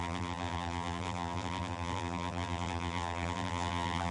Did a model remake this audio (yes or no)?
yes